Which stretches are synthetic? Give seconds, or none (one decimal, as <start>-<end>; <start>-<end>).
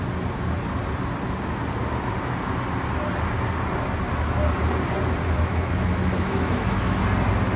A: 5.2-7.0